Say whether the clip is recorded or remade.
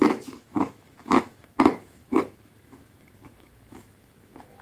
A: remade